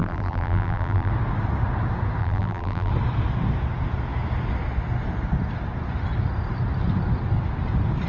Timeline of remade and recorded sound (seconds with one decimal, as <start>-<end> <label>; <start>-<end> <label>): 0.0-1.1 remade; 1.1-2.2 recorded; 2.2-2.9 remade; 2.9-8.1 recorded